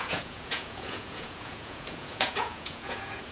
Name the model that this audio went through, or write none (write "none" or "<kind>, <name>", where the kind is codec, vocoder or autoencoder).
vocoder, Vocos